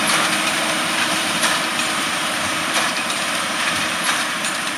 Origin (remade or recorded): remade